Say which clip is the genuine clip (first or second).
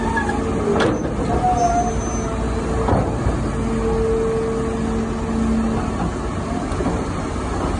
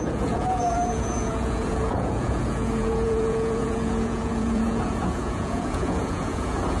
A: first